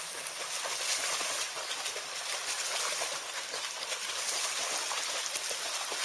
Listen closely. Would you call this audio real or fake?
real